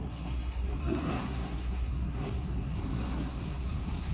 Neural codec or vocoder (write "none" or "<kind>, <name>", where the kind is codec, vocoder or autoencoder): codec, SNAC